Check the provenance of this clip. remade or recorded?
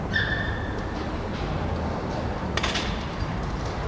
remade